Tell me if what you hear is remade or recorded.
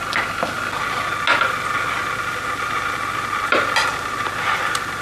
recorded